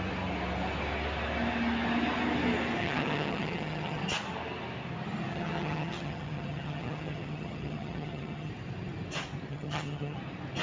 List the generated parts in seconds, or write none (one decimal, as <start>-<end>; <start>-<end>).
2.8-4.0; 5.3-8.5; 9.5-10.2